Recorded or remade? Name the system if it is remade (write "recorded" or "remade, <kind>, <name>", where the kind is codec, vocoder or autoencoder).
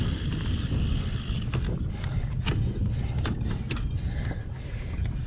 recorded